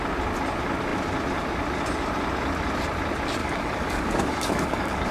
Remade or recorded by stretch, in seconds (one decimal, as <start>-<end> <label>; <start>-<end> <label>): 0.0-3.4 recorded; 3.4-5.1 remade